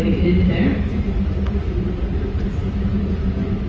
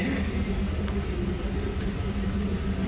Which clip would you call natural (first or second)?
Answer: second